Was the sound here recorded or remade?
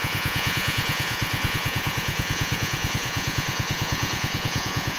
remade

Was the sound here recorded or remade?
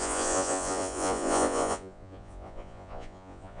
remade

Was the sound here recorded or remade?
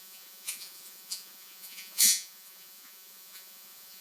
remade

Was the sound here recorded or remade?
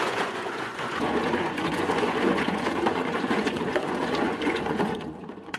remade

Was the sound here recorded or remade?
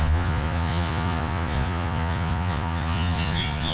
remade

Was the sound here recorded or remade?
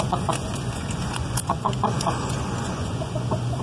remade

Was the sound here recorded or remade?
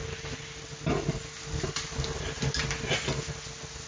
recorded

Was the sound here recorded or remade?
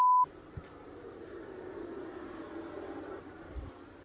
recorded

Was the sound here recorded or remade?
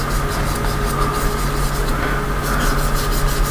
recorded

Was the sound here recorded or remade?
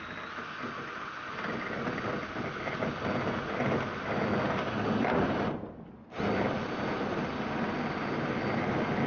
recorded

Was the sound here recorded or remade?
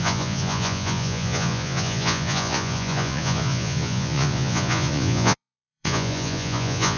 remade